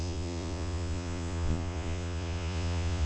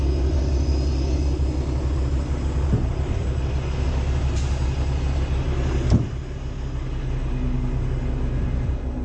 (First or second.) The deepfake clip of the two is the first